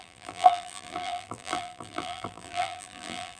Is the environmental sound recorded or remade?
remade